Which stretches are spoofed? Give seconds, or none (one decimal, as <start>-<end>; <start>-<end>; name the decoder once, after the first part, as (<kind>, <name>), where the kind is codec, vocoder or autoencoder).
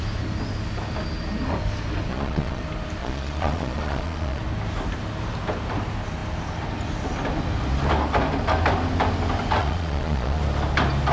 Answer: 2.1-2.6 (vocoder, Vocos); 3.0-4.4; 9.6-10.4